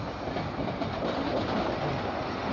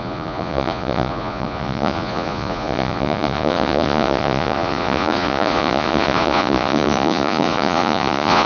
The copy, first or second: second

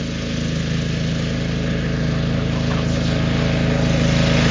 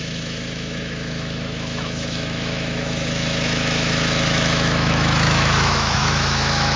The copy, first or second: second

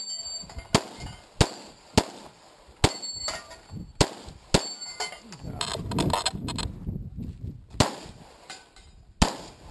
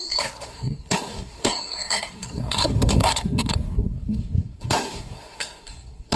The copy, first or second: second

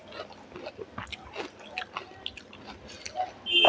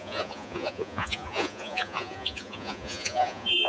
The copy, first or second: second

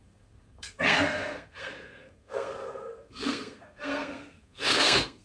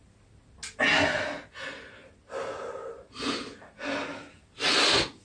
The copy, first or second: first